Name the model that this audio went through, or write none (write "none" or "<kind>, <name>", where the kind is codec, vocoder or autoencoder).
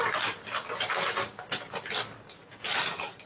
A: none